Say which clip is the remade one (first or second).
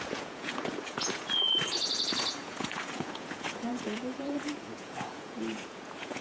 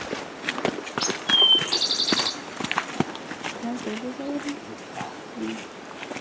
first